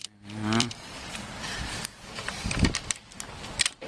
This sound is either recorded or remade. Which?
remade